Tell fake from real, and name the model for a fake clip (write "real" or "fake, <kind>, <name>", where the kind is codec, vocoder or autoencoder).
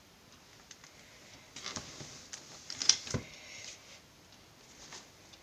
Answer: real